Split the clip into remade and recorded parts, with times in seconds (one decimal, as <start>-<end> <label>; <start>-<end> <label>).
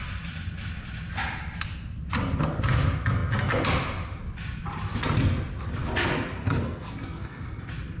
0.0-6.4 recorded; 6.4-7.6 remade; 7.6-8.0 recorded